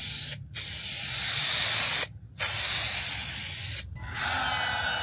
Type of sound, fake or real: real